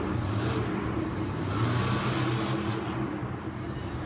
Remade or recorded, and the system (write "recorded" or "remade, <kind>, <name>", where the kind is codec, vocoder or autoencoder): recorded